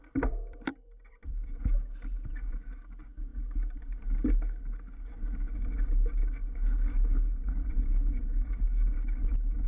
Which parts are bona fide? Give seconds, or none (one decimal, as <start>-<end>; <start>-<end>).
1.6-9.7